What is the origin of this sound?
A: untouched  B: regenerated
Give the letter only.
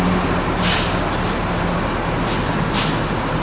A